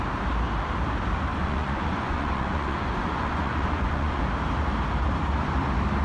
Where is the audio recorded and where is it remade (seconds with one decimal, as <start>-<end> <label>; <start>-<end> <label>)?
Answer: 0.0-1.3 recorded; 1.3-4.2 remade; 4.2-6.0 recorded

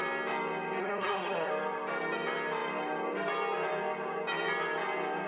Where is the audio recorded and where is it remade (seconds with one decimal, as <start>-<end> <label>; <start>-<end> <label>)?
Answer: 0.0-0.8 recorded; 0.8-1.5 remade; 1.5-5.3 recorded

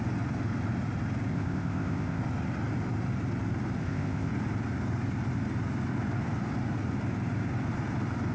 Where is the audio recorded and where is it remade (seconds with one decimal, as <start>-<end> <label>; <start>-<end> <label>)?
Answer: 0.0-1.3 recorded; 1.3-2.2 remade; 2.2-3.8 recorded; 3.8-4.3 remade; 4.3-8.3 recorded

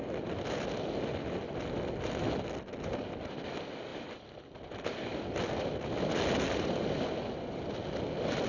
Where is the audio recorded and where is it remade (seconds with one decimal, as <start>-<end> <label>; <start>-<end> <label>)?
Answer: 0.0-3.9 recorded; 3.9-7.7 remade; 7.7-8.5 recorded

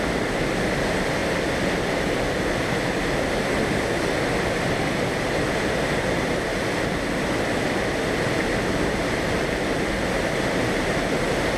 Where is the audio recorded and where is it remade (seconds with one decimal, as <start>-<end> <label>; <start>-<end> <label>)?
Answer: 0.0-11.6 recorded

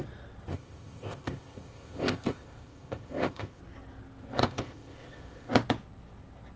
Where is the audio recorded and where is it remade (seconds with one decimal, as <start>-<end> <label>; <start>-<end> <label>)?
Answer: 0.0-0.5 recorded; 0.5-3.6 remade; 3.6-4.4 recorded; 4.4-5.5 remade; 5.5-6.6 recorded

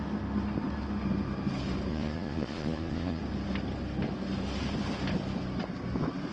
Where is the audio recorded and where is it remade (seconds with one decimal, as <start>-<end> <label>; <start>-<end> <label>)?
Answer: 0.0-1.9 recorded; 1.9-3.2 remade; 3.2-6.3 recorded

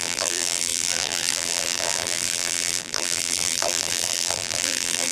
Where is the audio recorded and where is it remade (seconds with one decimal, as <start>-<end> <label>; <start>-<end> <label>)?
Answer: 0.0-5.1 remade